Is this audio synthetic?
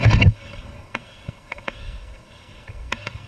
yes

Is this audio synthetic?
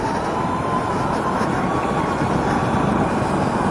no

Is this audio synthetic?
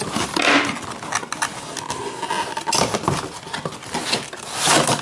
no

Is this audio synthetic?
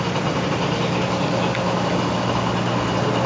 no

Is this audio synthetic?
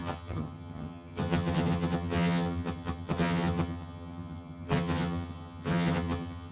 yes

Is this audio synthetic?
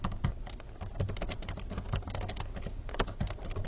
no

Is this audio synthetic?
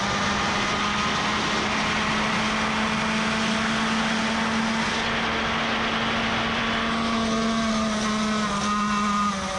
no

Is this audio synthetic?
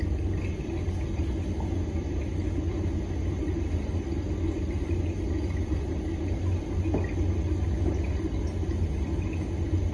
no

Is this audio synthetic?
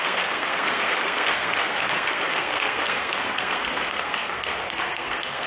yes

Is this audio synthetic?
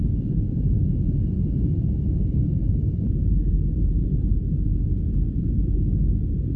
yes